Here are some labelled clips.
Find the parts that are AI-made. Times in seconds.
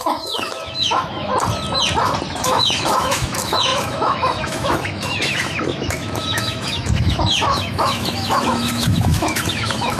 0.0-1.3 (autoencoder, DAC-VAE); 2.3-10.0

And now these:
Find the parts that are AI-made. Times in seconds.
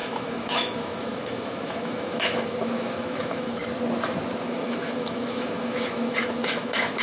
0.0-3.6 (autoencoder, DAC-VAE); 4.4-7.0